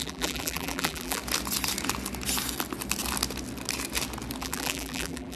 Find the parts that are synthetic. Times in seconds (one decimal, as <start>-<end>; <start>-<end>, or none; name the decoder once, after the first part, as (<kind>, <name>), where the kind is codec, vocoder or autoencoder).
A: 0.0-1.2 (vocoder, BigVGAN v2); 4.4-5.4

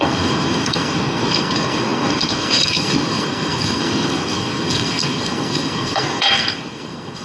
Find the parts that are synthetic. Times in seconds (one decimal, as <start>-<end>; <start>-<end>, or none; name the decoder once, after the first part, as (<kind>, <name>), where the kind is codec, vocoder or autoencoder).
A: 0.0-7.2 (codec, SNAC)